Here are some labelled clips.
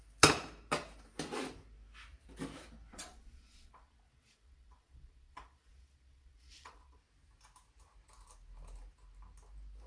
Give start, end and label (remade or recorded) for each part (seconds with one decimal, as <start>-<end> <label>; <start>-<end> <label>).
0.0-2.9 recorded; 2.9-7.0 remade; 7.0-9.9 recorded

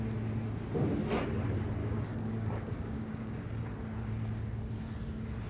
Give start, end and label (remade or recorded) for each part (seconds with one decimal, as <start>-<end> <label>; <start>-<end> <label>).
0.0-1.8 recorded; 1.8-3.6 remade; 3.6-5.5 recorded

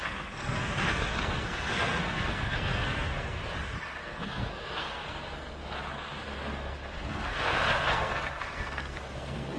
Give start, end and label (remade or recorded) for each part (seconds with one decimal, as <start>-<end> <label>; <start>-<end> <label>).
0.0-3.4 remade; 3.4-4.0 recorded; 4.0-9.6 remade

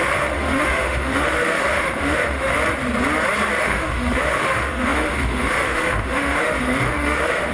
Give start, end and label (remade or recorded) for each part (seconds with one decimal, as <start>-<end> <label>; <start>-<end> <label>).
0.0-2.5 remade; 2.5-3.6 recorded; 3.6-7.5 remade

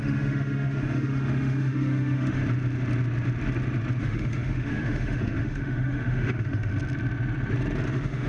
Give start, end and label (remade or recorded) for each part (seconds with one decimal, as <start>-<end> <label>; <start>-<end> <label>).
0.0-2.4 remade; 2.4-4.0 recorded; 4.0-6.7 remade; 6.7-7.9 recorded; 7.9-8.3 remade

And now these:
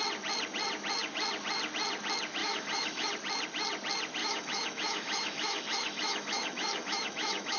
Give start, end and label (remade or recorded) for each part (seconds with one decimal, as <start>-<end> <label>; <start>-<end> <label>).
0.0-2.4 recorded; 2.4-3.1 remade; 3.1-4.2 recorded; 4.2-7.6 remade